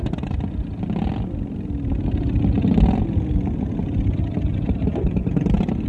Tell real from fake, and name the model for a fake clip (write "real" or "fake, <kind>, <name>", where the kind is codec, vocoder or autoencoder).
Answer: real